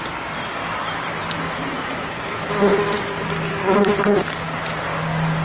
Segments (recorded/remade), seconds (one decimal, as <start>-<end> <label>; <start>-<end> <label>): 0.0-5.4 recorded